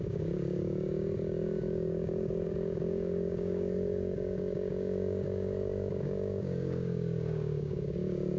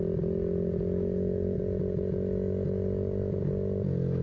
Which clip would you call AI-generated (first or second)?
first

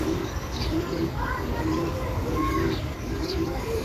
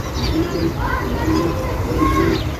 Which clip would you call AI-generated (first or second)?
first